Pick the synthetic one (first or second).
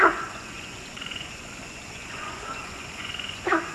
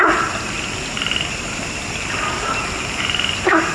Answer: first